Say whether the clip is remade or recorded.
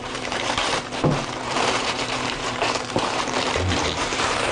remade